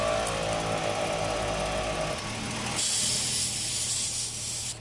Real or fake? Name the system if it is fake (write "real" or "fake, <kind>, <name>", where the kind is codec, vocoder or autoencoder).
real